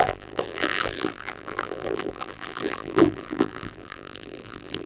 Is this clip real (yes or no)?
no